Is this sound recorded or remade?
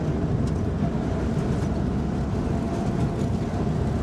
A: recorded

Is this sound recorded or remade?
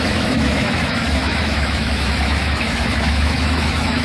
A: remade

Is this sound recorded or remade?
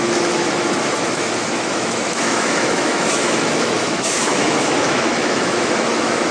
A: remade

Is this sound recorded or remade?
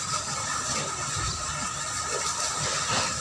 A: recorded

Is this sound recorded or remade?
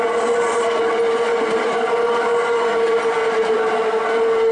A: recorded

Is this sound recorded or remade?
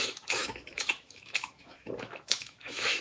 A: remade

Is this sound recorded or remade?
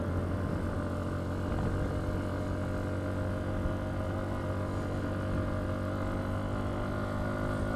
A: recorded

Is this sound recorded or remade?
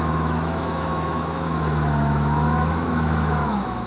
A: remade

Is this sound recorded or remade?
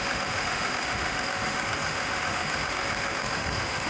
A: remade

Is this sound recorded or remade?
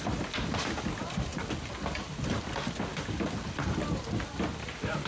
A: recorded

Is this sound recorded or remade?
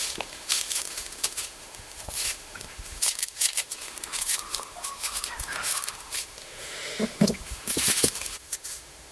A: remade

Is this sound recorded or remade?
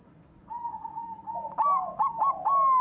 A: recorded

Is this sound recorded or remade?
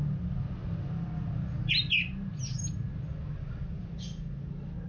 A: recorded